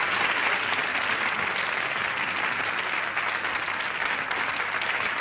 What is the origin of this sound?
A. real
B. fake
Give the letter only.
A